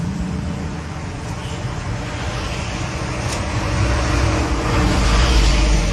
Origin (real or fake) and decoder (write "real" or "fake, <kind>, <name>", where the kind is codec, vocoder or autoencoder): fake, vocoder, Vocos